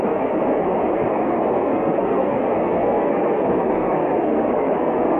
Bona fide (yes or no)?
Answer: no